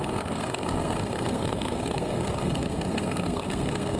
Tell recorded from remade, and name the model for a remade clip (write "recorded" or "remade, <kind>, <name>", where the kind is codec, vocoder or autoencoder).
remade, codec, SNAC